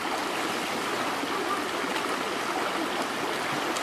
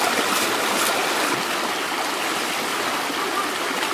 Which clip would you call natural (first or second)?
first